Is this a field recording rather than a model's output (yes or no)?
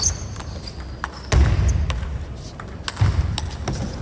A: yes